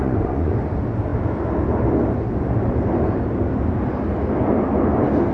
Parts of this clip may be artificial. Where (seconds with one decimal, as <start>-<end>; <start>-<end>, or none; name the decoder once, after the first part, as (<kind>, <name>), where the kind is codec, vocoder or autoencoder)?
0.0-0.6 (vocoder, Vocos)